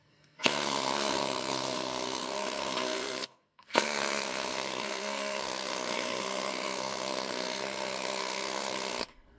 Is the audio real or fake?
fake